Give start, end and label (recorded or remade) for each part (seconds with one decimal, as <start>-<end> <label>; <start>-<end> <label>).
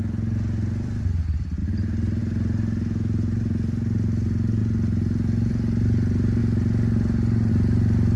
0.0-8.2 recorded